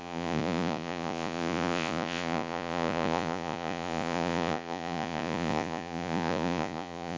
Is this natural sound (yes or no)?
no